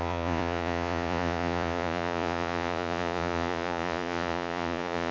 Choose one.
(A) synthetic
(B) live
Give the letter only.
A